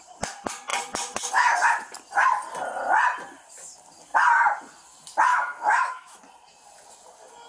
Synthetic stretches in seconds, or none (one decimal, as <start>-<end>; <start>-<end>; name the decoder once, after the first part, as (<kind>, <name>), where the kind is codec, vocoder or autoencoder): 5.3-6.2 (autoencoder, DAC-VAE)

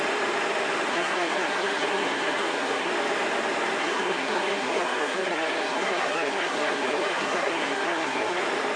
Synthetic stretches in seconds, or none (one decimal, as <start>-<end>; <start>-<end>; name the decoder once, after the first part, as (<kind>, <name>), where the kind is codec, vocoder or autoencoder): 0.9-2.9 (codec, SNAC); 3.8-8.4